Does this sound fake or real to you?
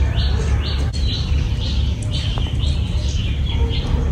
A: real